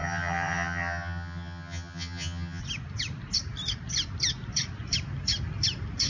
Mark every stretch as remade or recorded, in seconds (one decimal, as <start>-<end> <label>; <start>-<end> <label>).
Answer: 0.0-2.6 remade; 2.6-6.1 recorded